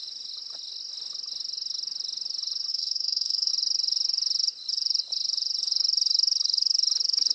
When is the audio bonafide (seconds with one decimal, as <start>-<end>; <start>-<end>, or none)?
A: 0.0-2.7; 3.5-7.3